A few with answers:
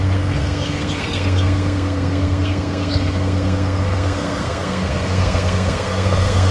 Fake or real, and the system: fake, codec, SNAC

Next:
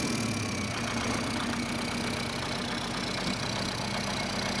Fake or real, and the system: real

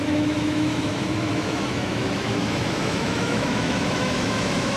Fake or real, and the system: fake, autoencoder, DAC-VAE